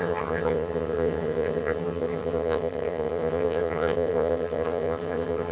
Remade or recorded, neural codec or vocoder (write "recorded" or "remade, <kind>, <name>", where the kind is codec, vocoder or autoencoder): remade, vocoder, HiFi-GAN